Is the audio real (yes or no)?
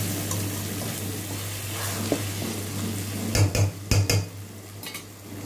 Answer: yes